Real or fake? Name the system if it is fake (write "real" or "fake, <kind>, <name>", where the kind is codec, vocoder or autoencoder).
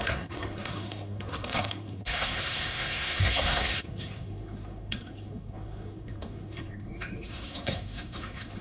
fake, codec, SNAC